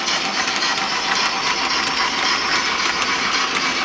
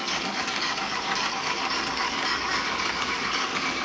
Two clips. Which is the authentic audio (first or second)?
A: first